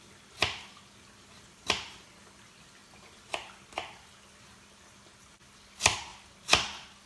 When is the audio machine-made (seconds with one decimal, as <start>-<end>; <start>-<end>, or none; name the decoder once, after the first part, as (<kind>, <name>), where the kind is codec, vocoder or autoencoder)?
2.8-3.5 (vocoder, BigVGAN v2)